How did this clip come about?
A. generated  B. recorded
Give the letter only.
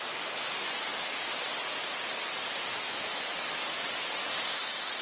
B